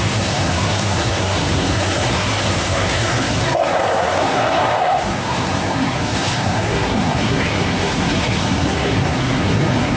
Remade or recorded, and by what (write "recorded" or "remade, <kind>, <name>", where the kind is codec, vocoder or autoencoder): remade, codec, SNAC